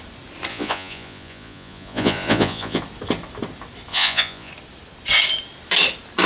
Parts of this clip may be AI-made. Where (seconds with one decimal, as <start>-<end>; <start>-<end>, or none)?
0.5-2.8; 3.9-4.5